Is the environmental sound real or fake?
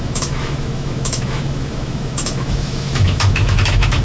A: fake